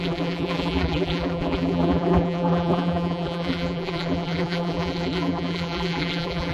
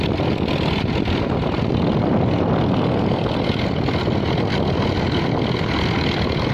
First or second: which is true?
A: second